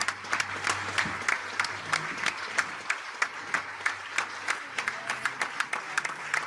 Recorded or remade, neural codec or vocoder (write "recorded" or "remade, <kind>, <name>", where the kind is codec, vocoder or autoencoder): recorded